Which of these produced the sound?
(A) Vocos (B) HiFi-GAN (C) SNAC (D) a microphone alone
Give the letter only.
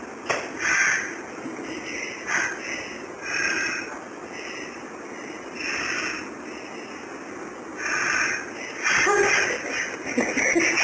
D